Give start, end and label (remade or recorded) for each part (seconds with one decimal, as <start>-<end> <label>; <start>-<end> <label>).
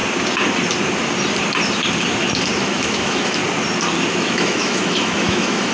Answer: 0.0-2.6 recorded; 2.6-3.4 remade; 3.4-4.1 recorded; 4.1-5.7 remade